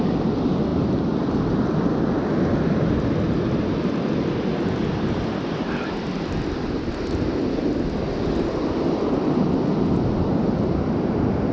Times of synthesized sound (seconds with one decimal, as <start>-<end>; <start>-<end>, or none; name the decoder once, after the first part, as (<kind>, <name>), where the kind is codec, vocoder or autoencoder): none